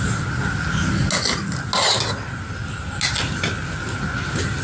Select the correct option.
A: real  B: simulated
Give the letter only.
A